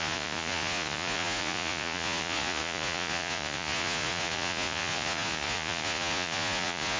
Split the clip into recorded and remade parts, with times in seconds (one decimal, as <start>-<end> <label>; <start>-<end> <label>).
0.0-7.0 remade

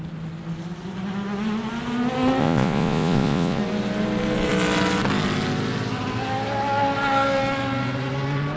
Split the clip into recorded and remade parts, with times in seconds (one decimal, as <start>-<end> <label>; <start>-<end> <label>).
0.0-2.4 recorded; 2.4-3.6 remade; 3.6-8.6 recorded

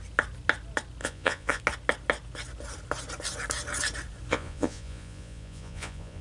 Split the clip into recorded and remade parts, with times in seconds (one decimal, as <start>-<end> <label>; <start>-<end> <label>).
0.0-1.0 recorded; 1.0-1.6 remade; 1.6-4.3 recorded; 4.3-6.2 remade

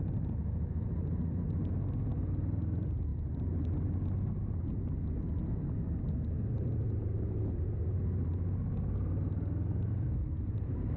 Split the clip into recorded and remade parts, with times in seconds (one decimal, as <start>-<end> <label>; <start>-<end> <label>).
0.0-11.0 recorded

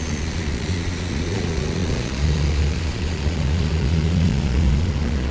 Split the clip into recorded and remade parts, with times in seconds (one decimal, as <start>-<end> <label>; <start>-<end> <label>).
0.0-5.3 remade

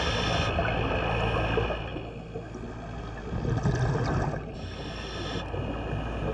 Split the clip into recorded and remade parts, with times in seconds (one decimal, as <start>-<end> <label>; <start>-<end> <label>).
0.0-6.3 recorded

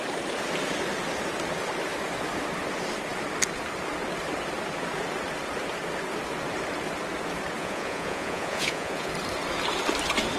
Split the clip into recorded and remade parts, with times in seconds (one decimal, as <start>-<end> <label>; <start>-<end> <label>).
0.0-7.6 recorded; 7.6-9.1 remade; 9.1-10.4 recorded

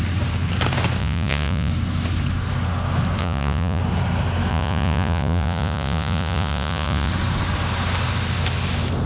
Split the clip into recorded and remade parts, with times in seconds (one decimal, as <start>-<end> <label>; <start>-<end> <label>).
0.0-1.0 recorded; 1.0-1.7 remade; 1.7-3.2 recorded; 3.2-3.8 remade; 3.8-4.5 recorded; 4.5-7.1 remade; 7.1-9.1 recorded